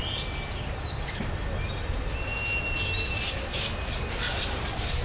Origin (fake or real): real